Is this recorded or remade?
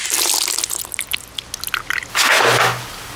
recorded